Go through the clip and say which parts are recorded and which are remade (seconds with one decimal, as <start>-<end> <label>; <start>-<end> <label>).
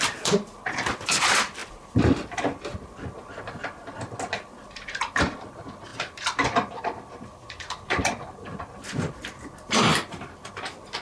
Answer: 0.0-5.9 recorded; 5.9-8.6 remade; 8.6-9.9 recorded; 9.9-10.5 remade; 10.5-11.0 recorded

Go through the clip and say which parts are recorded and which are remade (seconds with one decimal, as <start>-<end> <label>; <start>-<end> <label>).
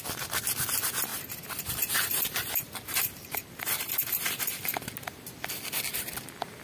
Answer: 0.0-1.1 recorded; 1.1-4.7 remade; 4.7-6.6 recorded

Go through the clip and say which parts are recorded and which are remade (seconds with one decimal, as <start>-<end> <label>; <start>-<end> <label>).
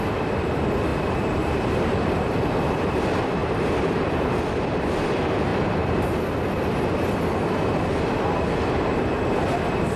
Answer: 0.0-0.9 recorded; 0.9-2.2 remade; 2.2-3.4 recorded; 3.4-4.4 remade; 4.4-5.5 recorded; 5.5-6.0 remade; 6.0-10.0 recorded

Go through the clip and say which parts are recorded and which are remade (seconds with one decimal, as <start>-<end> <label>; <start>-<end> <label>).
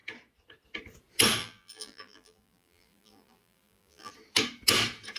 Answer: 0.0-1.4 recorded; 1.4-4.1 remade; 4.1-5.2 recorded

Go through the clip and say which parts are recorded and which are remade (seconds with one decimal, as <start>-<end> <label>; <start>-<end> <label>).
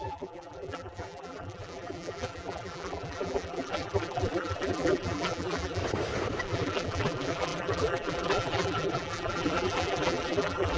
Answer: 0.0-5.8 remade; 5.8-6.4 recorded; 6.4-10.8 remade